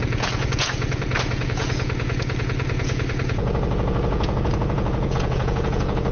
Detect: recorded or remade remade